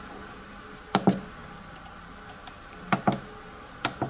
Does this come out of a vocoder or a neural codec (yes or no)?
no